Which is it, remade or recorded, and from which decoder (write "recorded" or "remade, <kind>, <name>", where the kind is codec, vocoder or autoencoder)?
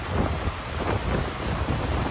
recorded